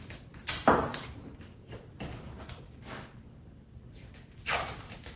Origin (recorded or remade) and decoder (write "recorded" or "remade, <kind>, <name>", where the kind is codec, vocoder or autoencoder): recorded